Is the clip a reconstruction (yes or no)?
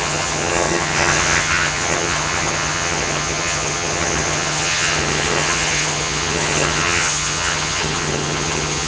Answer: yes